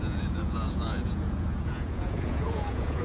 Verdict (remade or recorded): remade